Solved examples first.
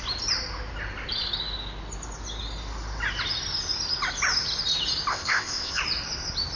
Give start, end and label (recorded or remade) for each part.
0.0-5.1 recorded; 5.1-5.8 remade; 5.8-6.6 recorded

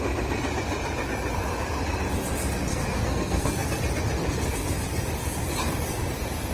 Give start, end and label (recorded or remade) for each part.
0.0-2.7 recorded; 2.7-3.8 remade; 3.8-6.5 recorded

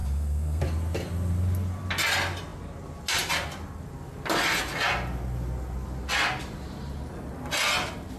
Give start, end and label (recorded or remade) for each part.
0.0-0.6 remade; 0.6-8.2 recorded

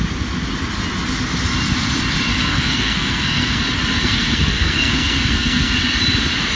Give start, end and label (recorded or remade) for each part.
0.0-2.3 recorded; 2.3-3.6 remade; 3.6-4.0 recorded; 4.0-5.7 remade; 5.7-6.6 recorded